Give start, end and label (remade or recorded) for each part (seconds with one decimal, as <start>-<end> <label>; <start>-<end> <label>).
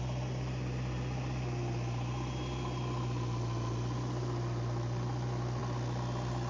0.0-6.5 recorded